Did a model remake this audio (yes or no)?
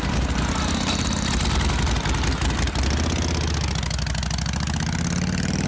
no